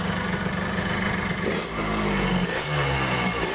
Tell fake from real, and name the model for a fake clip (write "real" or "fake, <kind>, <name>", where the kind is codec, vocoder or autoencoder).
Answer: fake, vocoder, BigVGAN v2